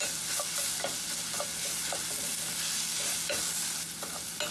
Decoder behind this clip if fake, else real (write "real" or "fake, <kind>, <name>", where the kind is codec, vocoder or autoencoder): real